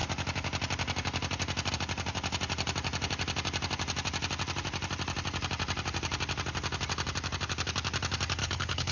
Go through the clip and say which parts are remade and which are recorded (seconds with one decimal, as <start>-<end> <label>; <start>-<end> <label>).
0.0-8.4 recorded; 8.4-8.9 remade